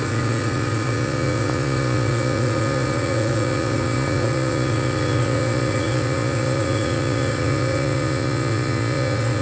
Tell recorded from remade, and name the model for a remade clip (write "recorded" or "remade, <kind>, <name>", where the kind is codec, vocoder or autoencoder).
remade, vocoder, Vocos